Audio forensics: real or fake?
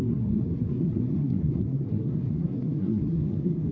fake